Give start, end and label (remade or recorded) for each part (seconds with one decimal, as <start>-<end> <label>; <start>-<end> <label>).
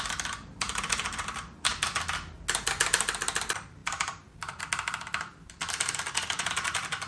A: 0.0-3.8 recorded; 3.8-4.6 remade; 4.6-7.1 recorded